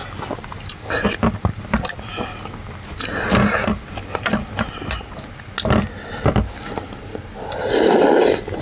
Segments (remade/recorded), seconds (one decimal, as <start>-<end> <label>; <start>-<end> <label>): 0.0-8.6 recorded